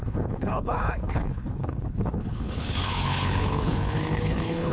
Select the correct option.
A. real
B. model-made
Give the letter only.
B